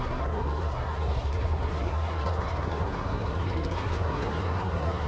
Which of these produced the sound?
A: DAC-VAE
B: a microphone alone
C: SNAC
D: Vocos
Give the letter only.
C